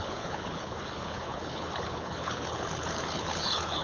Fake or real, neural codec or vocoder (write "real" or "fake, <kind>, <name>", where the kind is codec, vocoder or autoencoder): fake, codec, HILCodec